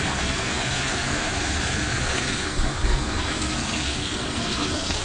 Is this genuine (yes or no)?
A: no